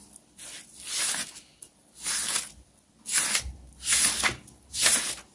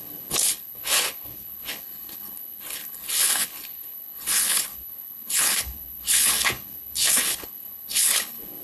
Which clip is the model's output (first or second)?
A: second